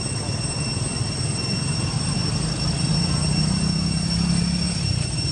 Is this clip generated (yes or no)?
no